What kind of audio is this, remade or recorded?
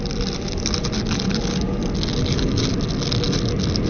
recorded